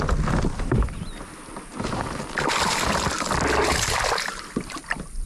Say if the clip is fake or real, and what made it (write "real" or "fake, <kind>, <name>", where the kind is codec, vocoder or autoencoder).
real